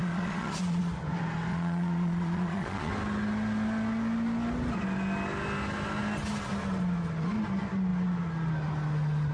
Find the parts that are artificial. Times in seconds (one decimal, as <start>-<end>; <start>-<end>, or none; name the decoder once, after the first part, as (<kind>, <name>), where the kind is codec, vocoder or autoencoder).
0.0-0.8 (vocoder, Vocos); 1.5-2.9